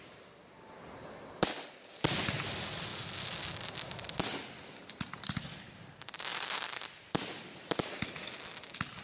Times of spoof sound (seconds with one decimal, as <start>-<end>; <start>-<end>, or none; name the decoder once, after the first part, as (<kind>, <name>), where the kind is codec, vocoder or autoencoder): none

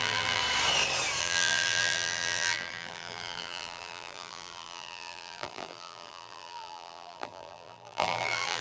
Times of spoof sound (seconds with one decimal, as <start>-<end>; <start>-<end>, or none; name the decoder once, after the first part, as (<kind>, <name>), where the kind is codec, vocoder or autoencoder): 0.0-0.4 (vocoder, BigVGAN v2); 1.2-8.6

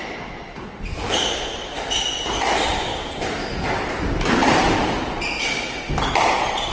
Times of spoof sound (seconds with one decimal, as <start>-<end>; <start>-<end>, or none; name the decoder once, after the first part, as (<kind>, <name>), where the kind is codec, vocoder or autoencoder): 2.9-3.6 (vocoder, BigVGAN v2); 4.4-5.0

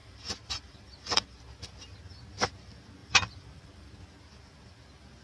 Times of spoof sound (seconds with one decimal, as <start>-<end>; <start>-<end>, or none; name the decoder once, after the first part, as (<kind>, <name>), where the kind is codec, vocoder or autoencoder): 0.0-1.4 (vocoder, BigVGAN v2); 3.0-3.9